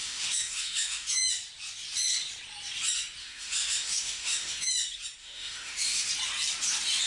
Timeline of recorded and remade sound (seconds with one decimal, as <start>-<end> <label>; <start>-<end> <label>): 0.0-1.3 remade; 1.3-3.2 recorded; 3.2-4.7 remade; 4.7-5.2 recorded; 5.2-6.1 remade; 6.1-7.1 recorded